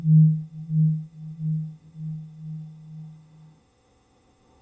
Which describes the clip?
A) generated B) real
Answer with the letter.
A